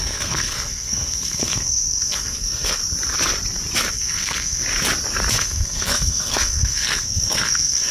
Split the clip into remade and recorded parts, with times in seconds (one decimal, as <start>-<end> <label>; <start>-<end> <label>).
0.0-2.8 remade; 2.8-3.9 recorded; 3.9-4.6 remade; 4.6-5.3 recorded; 5.3-7.9 remade

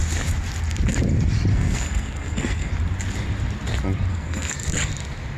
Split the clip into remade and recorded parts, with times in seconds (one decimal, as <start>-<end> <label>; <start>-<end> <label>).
0.0-1.5 recorded; 1.5-2.7 remade; 2.7-4.1 recorded; 4.1-4.9 remade; 4.9-5.4 recorded

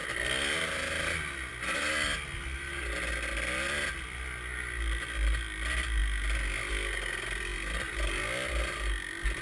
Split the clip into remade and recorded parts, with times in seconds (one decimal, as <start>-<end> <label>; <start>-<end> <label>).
0.0-9.4 recorded

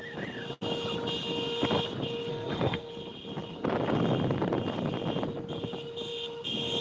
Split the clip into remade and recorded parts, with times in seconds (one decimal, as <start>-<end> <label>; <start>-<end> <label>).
0.0-2.3 recorded; 2.3-2.9 remade; 2.9-6.8 recorded

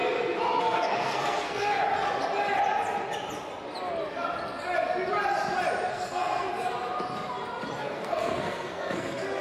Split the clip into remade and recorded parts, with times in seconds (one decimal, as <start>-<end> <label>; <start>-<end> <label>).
0.0-0.6 recorded; 0.6-1.8 remade; 1.8-5.9 recorded; 5.9-6.5 remade; 6.5-7.8 recorded; 7.8-9.4 remade

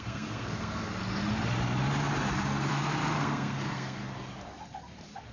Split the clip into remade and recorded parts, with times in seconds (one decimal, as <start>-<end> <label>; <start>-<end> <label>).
0.0-0.9 remade; 0.9-2.7 recorded; 2.7-4.0 remade; 4.0-5.3 recorded

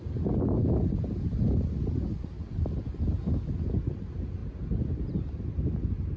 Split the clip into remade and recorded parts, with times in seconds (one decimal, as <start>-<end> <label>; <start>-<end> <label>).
0.0-6.2 recorded